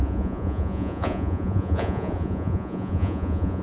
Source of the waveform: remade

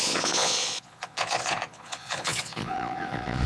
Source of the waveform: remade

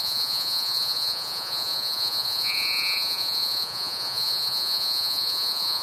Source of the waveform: remade